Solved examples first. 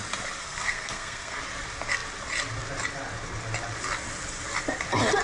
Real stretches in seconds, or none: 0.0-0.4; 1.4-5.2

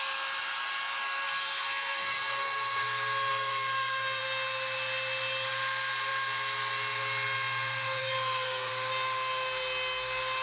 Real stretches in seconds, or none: 0.0-1.0; 2.8-3.3; 4.2-8.0; 8.7-10.4

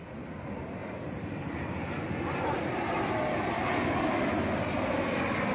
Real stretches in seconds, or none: 0.0-5.5

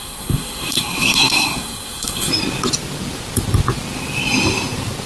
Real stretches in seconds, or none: 2.3-5.1

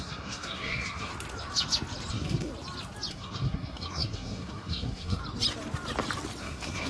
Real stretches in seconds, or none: 1.1-2.1; 2.5-3.1; 5.2-6.4

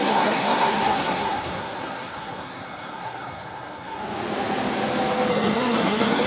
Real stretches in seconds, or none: 4.0-5.3

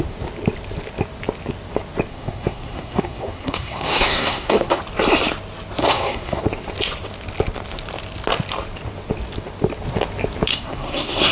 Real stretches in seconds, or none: 0.0-2.1; 4.8-5.8; 6.4-10.5